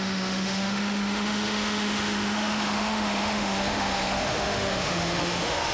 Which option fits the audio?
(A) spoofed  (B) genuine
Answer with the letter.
A